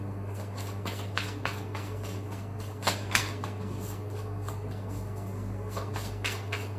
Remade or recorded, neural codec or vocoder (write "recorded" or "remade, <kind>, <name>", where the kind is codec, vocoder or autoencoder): remade, codec, SNAC